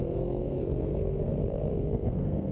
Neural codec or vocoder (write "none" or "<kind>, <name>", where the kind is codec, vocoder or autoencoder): codec, SNAC